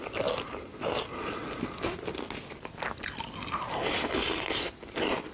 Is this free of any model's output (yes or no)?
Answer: yes